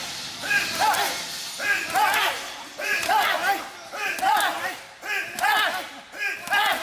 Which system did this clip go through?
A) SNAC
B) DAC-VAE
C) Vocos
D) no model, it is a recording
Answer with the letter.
D